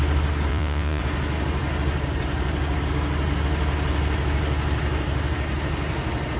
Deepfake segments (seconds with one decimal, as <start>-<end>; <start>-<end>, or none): 0.5-1.0